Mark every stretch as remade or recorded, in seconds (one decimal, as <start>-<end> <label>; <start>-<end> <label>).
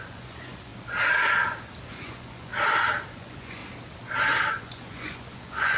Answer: 0.0-0.7 remade; 0.7-1.8 recorded; 1.8-2.5 remade; 2.5-3.1 recorded; 3.1-3.6 remade; 3.6-4.5 recorded; 4.5-5.8 remade